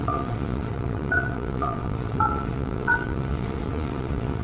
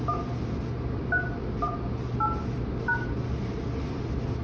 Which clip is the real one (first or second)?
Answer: second